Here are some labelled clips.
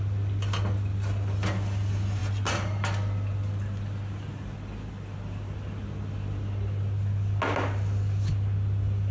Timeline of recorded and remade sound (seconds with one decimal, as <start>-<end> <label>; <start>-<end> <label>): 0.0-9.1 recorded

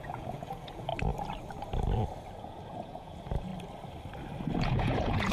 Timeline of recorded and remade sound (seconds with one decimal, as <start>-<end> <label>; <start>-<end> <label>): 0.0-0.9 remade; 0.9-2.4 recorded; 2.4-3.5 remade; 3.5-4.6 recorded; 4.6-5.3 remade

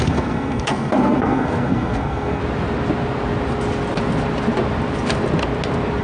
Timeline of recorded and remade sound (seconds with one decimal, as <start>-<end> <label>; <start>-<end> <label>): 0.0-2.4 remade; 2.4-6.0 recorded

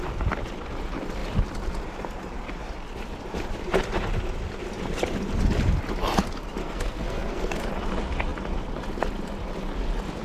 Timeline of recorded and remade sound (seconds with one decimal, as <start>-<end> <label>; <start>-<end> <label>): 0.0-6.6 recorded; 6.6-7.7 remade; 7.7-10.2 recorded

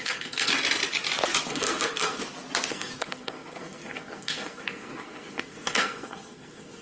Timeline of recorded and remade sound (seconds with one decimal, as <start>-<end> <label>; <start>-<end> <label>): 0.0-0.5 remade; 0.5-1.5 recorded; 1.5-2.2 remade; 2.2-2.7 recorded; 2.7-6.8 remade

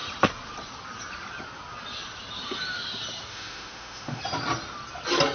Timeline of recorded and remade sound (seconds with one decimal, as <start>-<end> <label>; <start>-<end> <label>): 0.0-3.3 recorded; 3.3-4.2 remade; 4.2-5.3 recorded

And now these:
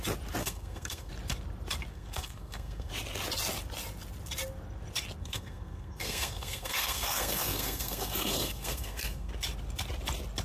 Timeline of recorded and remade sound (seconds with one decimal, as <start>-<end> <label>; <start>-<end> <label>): 0.0-0.4 recorded; 0.4-1.1 remade; 1.1-1.9 recorded; 1.9-2.9 remade; 2.9-5.2 recorded; 5.2-9.3 remade; 9.3-10.4 recorded

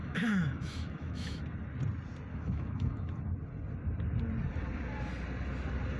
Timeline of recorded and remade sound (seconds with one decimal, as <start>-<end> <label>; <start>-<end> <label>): 0.0-1.4 remade; 1.4-2.3 recorded; 2.3-3.2 remade; 3.2-6.0 recorded